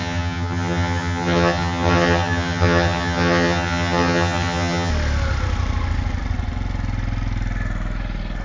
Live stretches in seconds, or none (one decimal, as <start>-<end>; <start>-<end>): 4.9-8.4